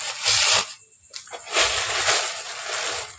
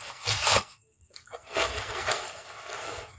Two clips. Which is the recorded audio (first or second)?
first